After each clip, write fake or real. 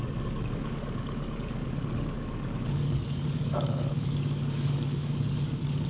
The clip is fake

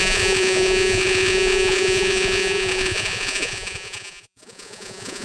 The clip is fake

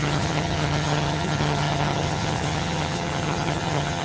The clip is fake